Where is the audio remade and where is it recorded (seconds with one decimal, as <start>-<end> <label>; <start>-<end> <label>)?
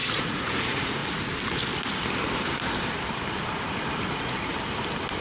0.0-1.0 remade; 1.0-4.1 recorded; 4.1-4.5 remade; 4.5-5.2 recorded